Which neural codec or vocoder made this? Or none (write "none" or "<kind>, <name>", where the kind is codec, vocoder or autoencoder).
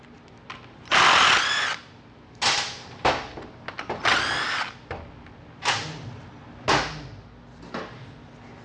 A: none